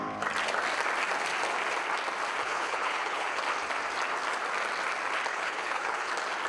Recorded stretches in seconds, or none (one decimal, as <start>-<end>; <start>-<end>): 0.0-2.4; 3.4-5.3; 6.1-6.5